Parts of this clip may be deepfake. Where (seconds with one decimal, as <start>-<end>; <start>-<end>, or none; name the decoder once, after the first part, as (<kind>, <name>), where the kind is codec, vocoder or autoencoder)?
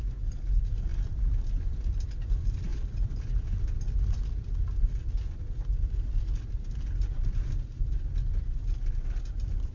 none